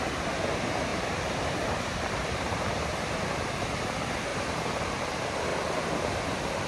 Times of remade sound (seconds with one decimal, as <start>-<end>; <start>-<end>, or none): 0.9-2.9; 4.3-5.0